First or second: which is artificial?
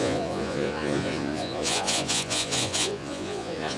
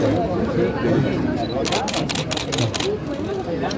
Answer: first